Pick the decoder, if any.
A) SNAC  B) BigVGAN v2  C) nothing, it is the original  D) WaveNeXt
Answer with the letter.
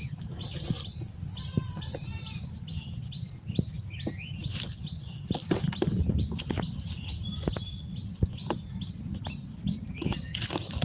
C